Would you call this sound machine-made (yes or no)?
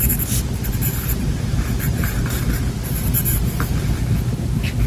no